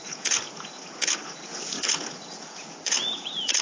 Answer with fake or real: fake